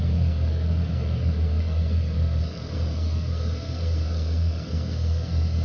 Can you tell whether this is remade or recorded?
remade